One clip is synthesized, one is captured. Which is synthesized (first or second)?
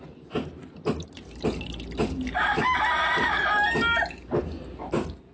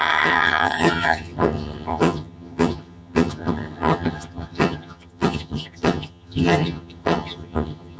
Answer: second